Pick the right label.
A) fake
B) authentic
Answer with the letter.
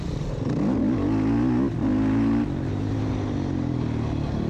B